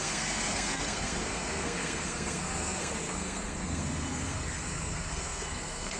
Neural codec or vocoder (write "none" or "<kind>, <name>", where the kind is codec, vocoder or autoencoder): codec, SNAC